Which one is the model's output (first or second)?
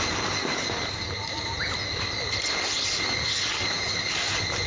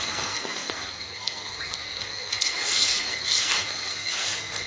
second